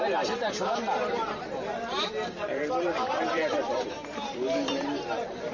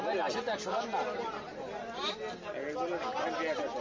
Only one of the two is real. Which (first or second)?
second